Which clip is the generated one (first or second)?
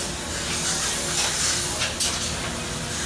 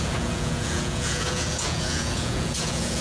second